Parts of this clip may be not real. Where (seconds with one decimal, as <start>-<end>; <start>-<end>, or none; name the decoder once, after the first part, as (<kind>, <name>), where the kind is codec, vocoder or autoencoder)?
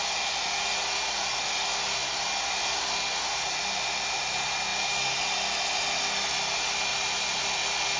6.9-7.4 (vocoder, BigVGAN v2)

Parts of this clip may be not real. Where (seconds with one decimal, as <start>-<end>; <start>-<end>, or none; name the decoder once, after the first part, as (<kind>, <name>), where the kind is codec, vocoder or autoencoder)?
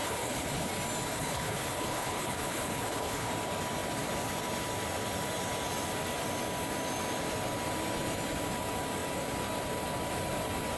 0.0-0.7 (codec, HILCodec); 1.1-3.3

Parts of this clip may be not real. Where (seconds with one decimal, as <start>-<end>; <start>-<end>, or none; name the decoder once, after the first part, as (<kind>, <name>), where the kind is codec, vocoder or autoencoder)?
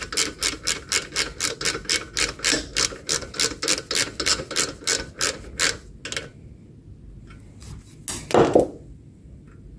none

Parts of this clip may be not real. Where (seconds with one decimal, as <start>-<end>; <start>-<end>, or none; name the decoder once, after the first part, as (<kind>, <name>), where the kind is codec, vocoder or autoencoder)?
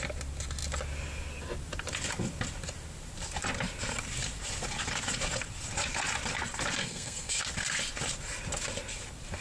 6.8-7.4 (codec, SNAC)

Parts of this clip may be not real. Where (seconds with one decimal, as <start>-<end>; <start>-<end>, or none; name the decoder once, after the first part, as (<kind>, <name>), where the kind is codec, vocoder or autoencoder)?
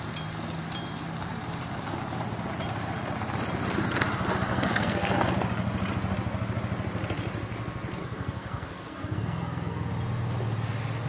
4.5-5.3 (codec, SNAC); 8.0-9.9